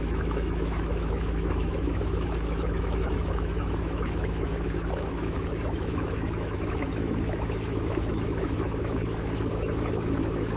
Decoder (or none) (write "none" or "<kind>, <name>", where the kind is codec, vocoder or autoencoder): autoencoder, DAC-VAE